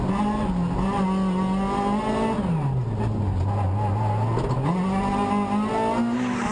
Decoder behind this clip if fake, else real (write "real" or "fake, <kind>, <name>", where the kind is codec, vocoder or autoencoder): real